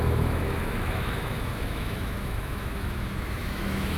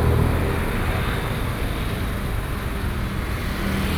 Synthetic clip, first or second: first